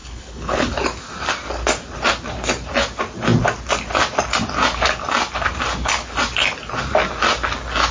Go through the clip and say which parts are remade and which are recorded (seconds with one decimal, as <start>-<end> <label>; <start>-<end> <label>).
0.0-0.7 remade; 0.7-7.9 recorded